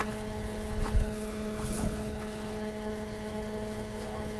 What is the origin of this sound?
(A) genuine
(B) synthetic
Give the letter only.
B